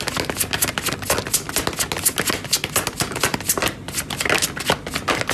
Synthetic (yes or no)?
no